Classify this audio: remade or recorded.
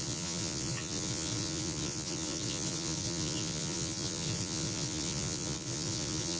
remade